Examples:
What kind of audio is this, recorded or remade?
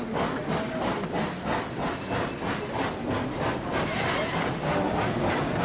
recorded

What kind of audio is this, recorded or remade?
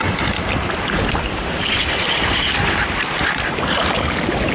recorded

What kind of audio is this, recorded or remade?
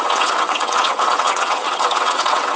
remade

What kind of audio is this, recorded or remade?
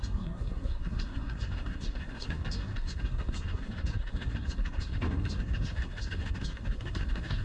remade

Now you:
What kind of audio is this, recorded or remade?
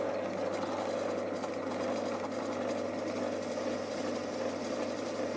recorded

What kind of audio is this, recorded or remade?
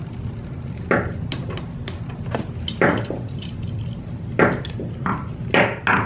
recorded